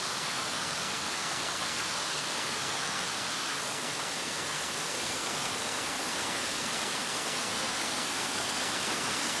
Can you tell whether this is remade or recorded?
remade